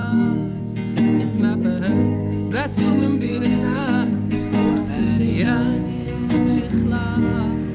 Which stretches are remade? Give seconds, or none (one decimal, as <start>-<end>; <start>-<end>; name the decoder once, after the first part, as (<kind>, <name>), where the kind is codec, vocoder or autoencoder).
0.0-0.6 (codec, DAC); 2.0-6.6